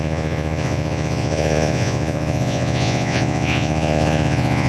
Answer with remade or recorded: remade